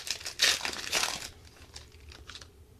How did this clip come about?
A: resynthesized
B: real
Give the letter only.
B